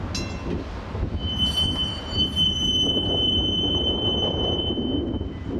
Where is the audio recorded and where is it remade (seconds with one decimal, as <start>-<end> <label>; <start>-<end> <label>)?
0.0-1.2 recorded; 1.2-4.6 remade; 4.6-5.6 recorded